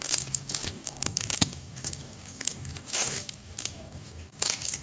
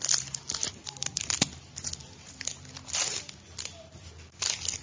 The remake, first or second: first